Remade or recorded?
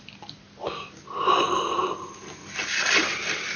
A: recorded